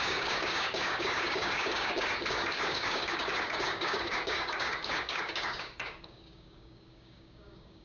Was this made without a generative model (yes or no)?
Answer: no